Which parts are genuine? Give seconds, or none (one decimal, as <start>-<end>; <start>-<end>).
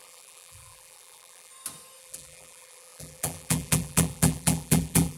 1.5-2.0